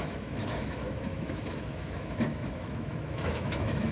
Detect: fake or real fake